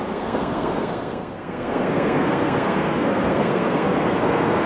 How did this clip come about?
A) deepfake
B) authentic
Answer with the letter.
A